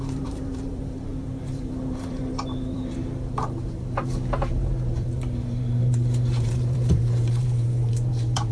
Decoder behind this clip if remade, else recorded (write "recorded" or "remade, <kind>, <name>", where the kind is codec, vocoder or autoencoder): remade, vocoder, BigVGAN v2